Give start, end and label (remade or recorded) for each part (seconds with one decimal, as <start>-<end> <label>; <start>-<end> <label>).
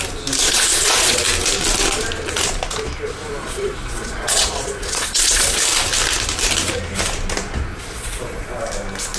0.0-0.4 recorded; 0.4-1.2 remade; 1.2-3.4 recorded; 3.4-5.6 remade; 5.6-7.7 recorded; 7.7-8.6 remade; 8.6-9.2 recorded